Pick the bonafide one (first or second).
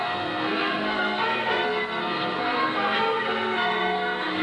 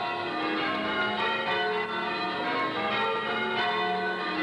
second